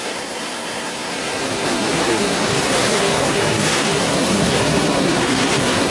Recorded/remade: remade